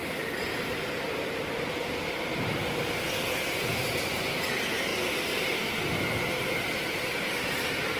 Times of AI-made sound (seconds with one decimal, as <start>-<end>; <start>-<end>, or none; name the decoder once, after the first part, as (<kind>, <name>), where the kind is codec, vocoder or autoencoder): 0.6-2.6 (vocoder, BigVGAN v2); 3.3-4.9; 5.8-8.0